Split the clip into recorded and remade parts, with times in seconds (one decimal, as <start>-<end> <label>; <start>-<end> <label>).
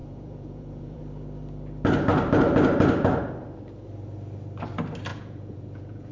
0.0-1.0 remade; 1.0-5.1 recorded; 5.1-6.1 remade